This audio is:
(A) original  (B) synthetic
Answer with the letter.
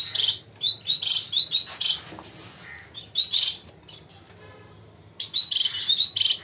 A